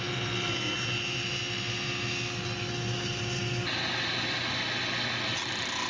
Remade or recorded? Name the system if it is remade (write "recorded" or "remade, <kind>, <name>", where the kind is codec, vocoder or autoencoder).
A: recorded